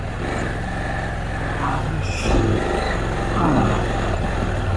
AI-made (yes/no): no